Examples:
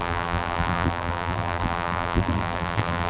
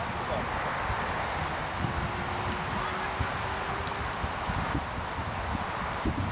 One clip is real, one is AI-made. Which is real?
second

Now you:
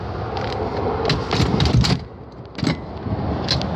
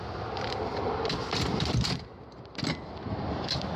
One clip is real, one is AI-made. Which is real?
first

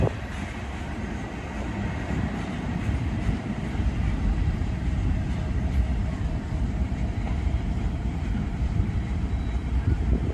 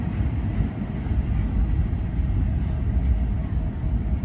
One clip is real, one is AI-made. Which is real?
second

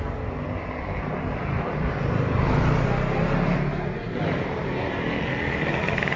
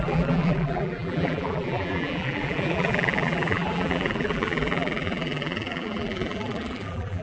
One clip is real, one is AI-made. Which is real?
first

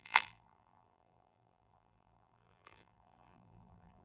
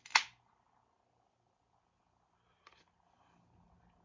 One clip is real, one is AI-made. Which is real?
second